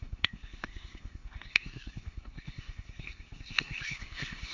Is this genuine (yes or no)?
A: no